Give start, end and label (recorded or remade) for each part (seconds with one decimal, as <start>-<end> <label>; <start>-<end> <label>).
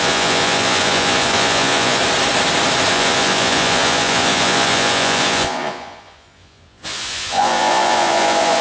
0.0-2.0 remade; 2.0-2.9 recorded; 2.9-8.6 remade